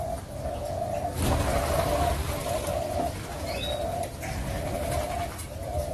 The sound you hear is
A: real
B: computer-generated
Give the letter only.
A